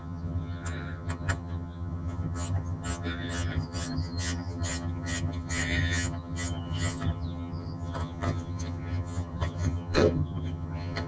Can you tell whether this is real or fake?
fake